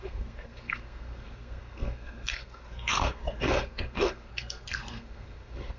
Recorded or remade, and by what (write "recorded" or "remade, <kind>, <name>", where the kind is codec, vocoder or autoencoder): remade, codec, SNAC